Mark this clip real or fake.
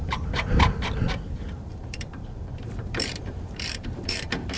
fake